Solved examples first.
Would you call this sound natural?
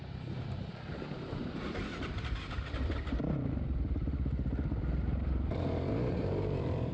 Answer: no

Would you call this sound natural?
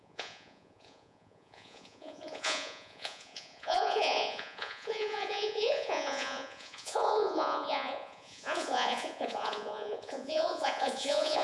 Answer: no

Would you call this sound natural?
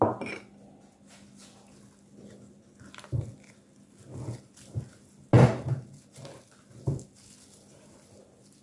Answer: yes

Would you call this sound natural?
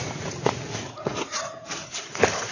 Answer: no